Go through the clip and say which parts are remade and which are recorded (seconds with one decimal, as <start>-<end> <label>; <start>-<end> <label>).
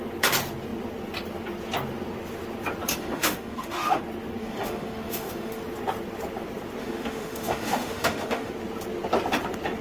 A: 0.0-2.9 recorded; 2.9-4.0 remade; 4.0-4.4 recorded; 4.4-5.6 remade; 5.6-6.8 recorded; 6.8-8.5 remade; 8.5-9.8 recorded